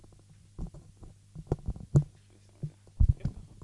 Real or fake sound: real